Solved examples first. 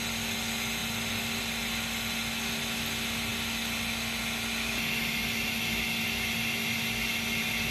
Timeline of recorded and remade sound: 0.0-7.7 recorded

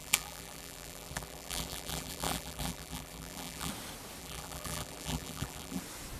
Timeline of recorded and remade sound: 0.0-3.7 remade; 3.7-4.2 recorded; 4.2-5.8 remade; 5.8-6.2 recorded

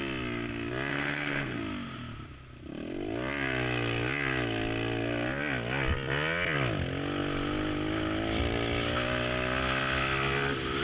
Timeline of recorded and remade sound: 0.0-0.9 recorded; 0.9-1.6 remade; 1.6-10.8 recorded

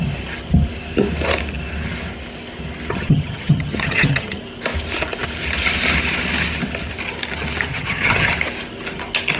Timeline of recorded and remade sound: 0.0-2.9 recorded; 2.9-4.4 remade; 4.4-7.7 recorded; 7.7-8.3 remade; 8.3-9.4 recorded

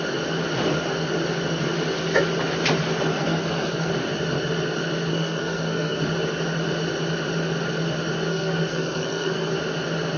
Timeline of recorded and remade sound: 0.0-3.1 recorded; 3.1-3.9 remade; 3.9-5.1 recorded; 5.1-6.0 remade; 6.0-8.3 recorded; 8.3-9.5 remade; 9.5-10.2 recorded

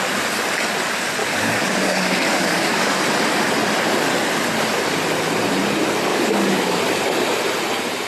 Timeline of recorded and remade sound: 0.0-1.2 recorded; 1.2-3.0 remade; 3.0-6.1 recorded; 6.1-6.8 remade; 6.8-8.1 recorded

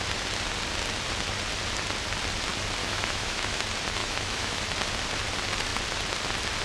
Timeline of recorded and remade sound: 0.0-2.8 recorded; 2.8-3.6 remade; 3.6-4.0 recorded; 4.0-4.6 remade; 4.6-6.6 recorded